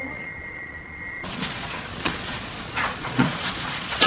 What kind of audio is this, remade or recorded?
remade